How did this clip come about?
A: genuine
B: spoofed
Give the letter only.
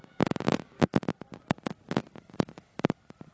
A